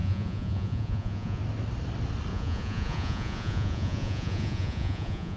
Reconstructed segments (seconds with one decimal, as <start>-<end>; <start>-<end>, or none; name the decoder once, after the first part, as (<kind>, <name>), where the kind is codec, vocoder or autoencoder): 0.0-1.4 (vocoder, Vocos); 2.3-5.4